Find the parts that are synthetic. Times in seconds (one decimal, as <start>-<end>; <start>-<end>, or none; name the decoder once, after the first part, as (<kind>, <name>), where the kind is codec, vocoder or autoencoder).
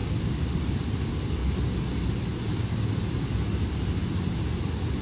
none